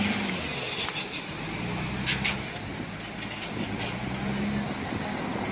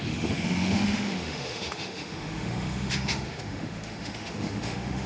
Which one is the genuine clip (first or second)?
first